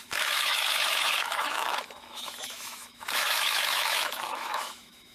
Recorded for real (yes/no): no